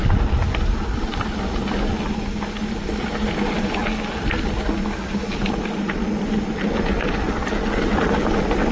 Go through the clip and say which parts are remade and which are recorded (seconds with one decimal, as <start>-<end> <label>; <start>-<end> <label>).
0.0-8.7 recorded